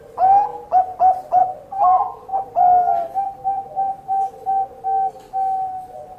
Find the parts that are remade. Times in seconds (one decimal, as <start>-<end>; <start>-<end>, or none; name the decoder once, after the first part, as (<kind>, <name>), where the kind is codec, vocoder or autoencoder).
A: none